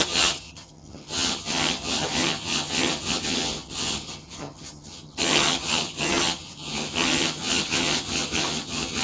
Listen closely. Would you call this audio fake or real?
fake